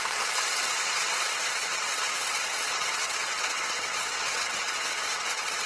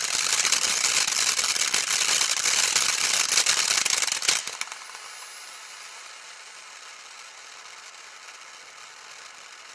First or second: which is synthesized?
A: first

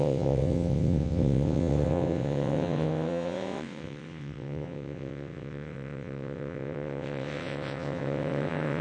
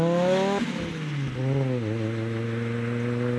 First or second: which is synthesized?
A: first